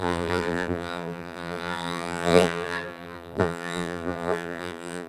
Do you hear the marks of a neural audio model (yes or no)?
yes